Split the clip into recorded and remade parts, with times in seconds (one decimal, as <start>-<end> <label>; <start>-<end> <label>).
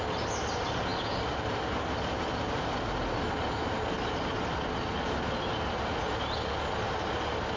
0.0-7.6 recorded